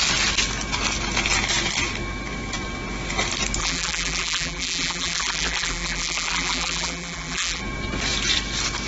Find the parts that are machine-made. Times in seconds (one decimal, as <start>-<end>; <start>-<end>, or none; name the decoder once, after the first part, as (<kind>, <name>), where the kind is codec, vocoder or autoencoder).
3.6-7.6 (vocoder, BigVGAN v2)